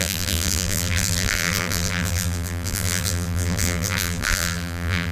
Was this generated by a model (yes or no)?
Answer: yes